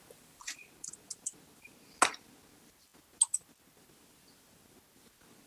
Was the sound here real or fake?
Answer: real